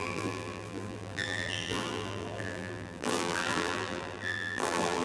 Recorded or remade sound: remade